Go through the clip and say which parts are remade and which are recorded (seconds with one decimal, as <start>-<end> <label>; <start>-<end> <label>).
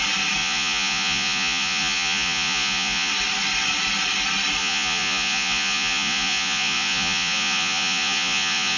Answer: 0.0-0.4 recorded; 0.4-3.1 remade; 3.1-4.6 recorded; 4.6-8.8 remade